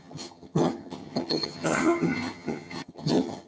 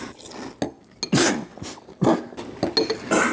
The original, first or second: second